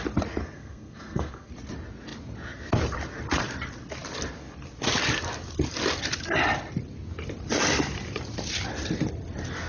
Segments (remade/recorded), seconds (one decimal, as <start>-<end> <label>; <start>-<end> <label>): 0.0-0.4 recorded; 0.4-1.5 remade; 1.5-9.7 recorded